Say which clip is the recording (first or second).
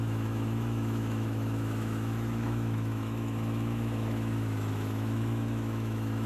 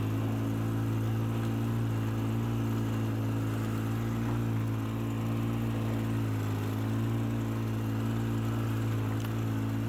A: second